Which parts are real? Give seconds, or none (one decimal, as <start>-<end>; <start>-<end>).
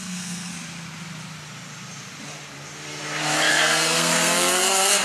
0.5-3.5